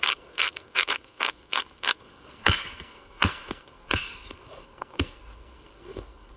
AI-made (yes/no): yes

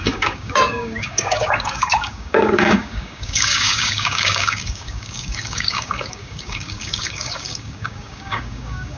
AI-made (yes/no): yes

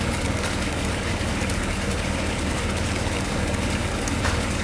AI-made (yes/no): yes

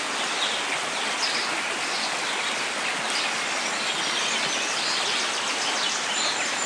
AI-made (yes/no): no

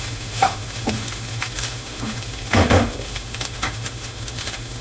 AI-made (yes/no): yes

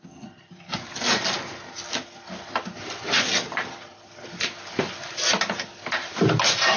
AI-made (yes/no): no